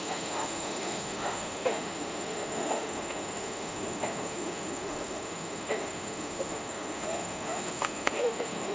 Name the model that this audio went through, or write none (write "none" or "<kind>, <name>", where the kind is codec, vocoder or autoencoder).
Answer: autoencoder, DAC-VAE